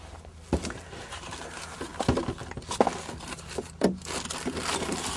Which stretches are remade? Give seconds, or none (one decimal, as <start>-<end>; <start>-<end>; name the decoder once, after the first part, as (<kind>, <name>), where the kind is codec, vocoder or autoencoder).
none